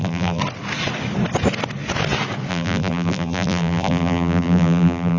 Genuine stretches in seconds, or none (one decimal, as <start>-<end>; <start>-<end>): 0.4-2.5